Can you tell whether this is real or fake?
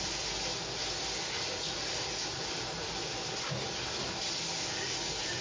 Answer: real